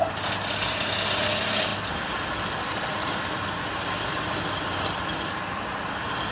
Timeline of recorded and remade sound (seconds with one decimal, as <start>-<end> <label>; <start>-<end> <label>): 0.0-6.3 recorded